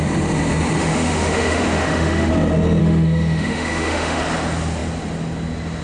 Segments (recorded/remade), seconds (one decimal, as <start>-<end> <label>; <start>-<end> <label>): 0.0-0.8 recorded; 0.8-2.3 remade; 2.3-2.8 recorded; 2.8-4.2 remade; 4.2-5.8 recorded